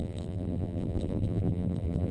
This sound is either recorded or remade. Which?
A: remade